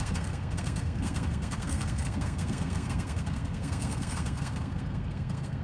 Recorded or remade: remade